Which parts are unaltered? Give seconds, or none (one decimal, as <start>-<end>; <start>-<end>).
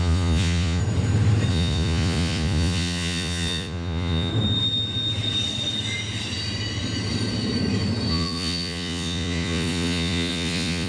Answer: 0.8-1.5; 4.3-8.1